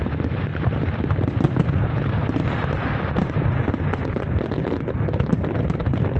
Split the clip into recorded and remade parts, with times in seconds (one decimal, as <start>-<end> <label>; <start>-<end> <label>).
0.0-0.5 recorded; 0.5-2.7 remade; 2.7-6.2 recorded